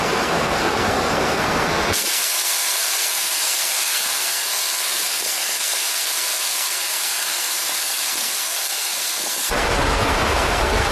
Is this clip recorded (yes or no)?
no